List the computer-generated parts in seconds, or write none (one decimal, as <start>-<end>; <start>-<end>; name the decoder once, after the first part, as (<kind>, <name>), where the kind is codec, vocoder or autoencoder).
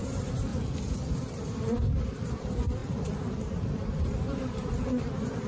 0.0-0.5 (vocoder, BigVGAN v2); 2.0-5.5